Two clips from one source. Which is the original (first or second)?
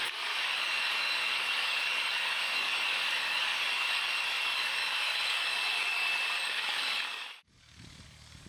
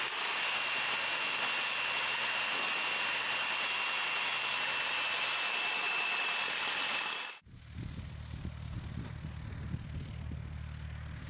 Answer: second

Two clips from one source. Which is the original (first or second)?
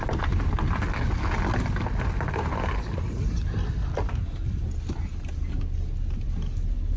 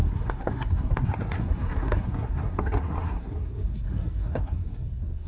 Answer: first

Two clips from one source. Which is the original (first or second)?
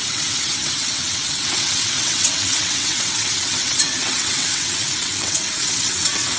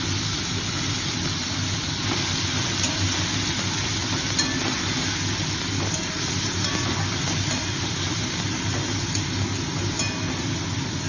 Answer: second